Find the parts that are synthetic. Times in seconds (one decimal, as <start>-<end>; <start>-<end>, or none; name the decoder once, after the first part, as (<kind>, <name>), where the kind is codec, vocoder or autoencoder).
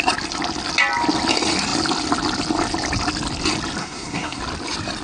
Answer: 3.8-4.4 (codec, SNAC)